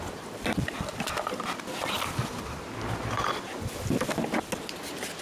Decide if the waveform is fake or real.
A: real